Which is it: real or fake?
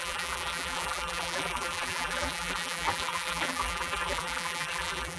fake